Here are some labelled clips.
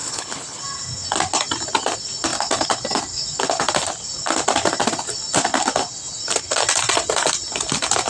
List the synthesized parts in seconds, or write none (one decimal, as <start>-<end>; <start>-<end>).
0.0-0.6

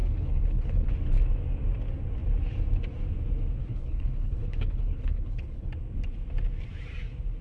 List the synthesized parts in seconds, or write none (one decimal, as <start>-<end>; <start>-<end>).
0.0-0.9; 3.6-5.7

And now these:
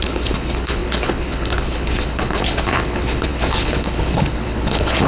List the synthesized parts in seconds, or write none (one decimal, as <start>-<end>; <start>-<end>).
0.0-5.1

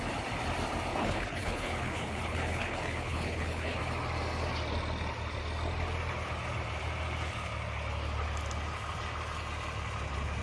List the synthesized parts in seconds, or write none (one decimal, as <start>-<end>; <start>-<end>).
0.9-3.8